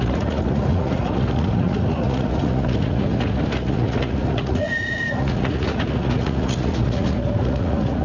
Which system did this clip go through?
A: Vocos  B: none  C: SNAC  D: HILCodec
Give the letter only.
A